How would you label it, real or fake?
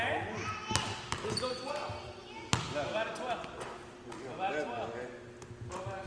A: real